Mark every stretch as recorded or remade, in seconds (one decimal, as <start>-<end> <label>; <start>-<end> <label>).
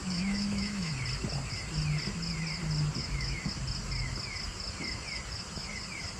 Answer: 0.0-0.9 remade; 0.9-3.0 recorded; 3.0-3.5 remade; 3.5-6.2 recorded